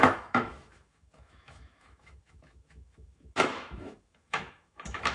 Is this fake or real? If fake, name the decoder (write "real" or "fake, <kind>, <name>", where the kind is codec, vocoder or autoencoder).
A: fake, autoencoder, DAC-VAE